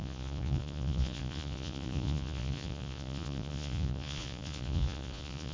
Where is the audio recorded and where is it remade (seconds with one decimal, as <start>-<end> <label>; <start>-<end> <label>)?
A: 0.0-5.5 remade